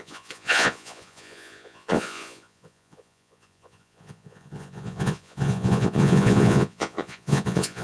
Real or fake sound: fake